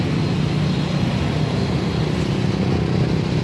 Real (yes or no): yes